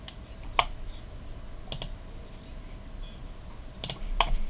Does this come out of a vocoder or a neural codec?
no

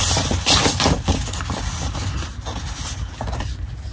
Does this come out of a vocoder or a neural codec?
no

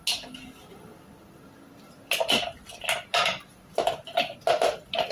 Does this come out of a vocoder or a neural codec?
no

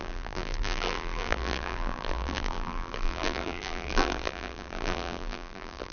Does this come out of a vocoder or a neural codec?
yes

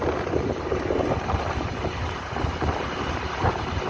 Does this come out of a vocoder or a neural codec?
yes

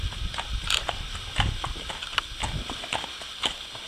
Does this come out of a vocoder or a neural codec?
no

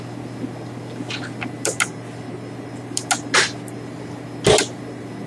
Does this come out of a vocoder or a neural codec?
no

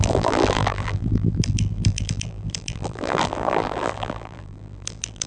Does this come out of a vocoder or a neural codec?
yes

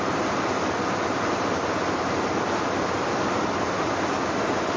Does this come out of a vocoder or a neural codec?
no